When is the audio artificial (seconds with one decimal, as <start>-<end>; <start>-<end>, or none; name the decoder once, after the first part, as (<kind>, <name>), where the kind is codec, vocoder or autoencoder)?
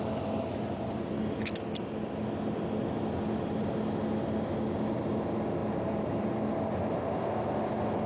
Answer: 5.6-6.3 (vocoder, BigVGAN v2)